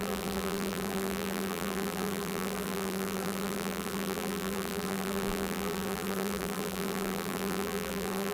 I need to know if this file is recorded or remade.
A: remade